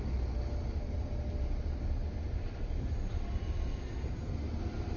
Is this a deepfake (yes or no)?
no